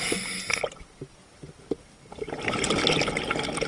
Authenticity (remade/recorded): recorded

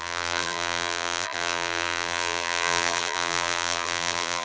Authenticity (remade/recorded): remade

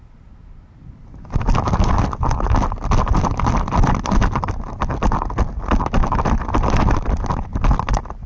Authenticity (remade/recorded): recorded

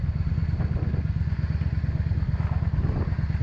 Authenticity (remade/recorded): recorded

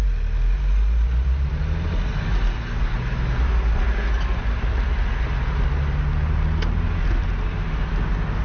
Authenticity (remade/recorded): recorded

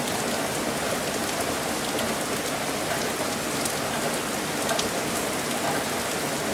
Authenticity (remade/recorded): recorded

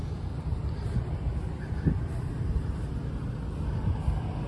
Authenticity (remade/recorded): recorded